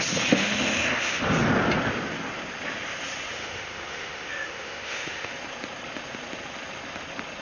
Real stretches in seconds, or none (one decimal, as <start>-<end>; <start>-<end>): 0.0-0.4; 1.2-3.3; 5.3-7.4